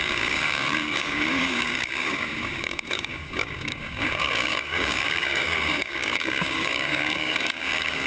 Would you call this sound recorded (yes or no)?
no